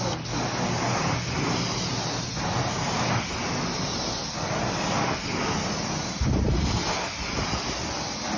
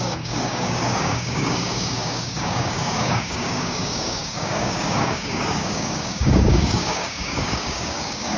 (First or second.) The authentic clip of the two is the first